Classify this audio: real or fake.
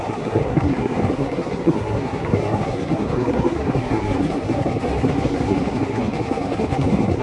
fake